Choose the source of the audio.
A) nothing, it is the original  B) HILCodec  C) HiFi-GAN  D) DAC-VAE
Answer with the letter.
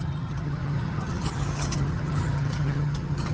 C